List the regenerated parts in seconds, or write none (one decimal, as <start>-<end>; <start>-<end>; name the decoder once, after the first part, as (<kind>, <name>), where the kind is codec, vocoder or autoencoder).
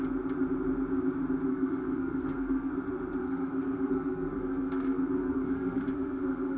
1.5-2.7 (codec, SNAC); 3.2-6.6